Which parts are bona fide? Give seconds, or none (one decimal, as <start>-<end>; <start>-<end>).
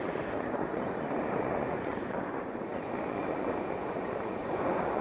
none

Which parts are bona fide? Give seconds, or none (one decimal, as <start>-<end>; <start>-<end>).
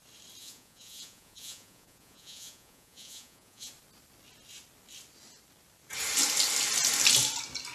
0.0-0.4; 3.7-7.7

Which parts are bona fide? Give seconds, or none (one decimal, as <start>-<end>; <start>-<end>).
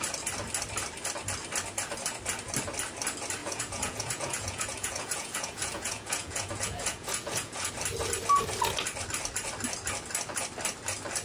0.0-3.4; 7.7-11.2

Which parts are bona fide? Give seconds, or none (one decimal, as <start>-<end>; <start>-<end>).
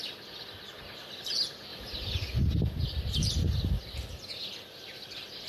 0.0-2.8; 3.3-5.5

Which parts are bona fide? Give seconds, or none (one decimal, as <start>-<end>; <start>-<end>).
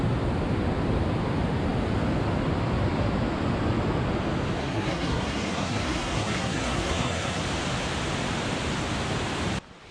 0.0-4.6; 7.4-9.9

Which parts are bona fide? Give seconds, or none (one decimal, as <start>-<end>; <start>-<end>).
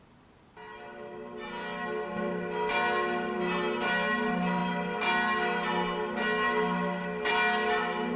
0.0-8.2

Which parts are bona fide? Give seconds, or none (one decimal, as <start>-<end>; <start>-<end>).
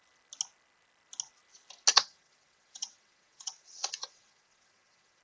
0.0-1.9